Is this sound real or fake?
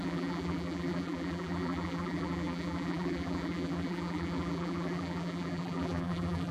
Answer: fake